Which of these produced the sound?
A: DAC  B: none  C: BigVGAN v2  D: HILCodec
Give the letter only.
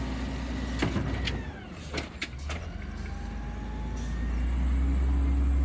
B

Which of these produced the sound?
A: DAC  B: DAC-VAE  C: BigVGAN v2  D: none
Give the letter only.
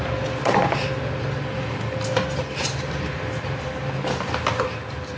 D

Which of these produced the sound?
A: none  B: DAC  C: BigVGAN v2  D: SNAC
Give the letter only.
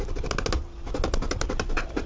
A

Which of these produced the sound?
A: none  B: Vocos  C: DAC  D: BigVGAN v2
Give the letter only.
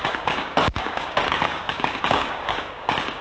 C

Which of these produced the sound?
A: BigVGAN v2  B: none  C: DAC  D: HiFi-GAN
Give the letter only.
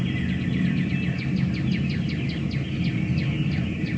B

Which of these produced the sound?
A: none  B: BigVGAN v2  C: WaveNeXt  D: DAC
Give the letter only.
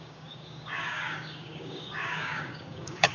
D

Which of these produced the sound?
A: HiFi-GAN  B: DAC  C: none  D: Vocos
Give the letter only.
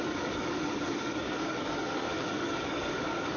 B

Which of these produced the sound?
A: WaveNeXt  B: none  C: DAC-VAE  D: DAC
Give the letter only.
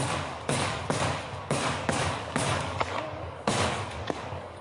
D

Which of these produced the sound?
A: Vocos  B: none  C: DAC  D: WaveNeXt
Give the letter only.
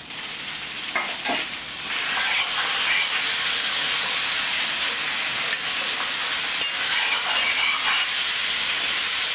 B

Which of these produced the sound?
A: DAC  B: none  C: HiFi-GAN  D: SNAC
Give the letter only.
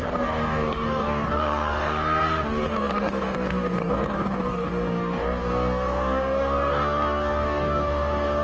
A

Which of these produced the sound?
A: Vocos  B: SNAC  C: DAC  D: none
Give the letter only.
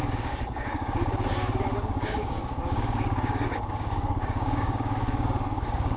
C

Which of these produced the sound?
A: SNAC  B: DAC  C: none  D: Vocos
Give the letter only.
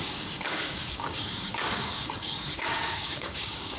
B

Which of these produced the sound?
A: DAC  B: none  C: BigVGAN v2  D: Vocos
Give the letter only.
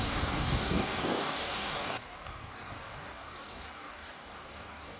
A